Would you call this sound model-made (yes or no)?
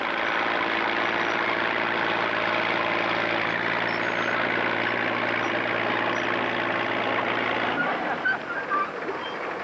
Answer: no